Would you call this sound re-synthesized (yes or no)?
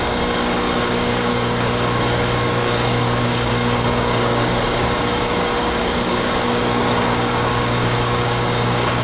yes